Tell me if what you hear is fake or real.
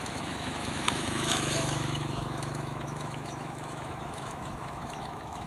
fake